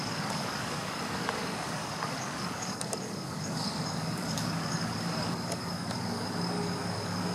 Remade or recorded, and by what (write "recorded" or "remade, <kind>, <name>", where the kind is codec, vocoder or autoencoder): remade, codec, DAC